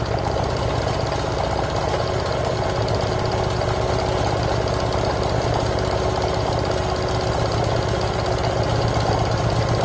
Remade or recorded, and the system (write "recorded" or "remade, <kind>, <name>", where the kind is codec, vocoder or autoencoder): recorded